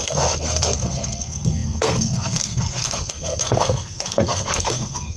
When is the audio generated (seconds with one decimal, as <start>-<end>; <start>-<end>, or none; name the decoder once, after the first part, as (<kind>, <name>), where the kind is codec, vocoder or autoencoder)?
0.0-5.2 (codec, SNAC)